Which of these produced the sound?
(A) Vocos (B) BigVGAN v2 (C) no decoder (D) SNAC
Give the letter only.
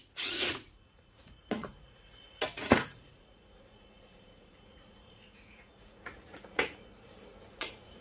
A